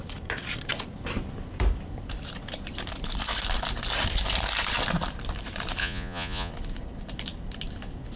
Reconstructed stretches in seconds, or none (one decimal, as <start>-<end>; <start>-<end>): 5.8-6.5